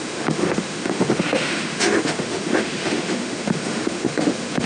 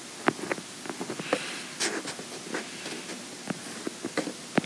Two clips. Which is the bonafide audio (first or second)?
second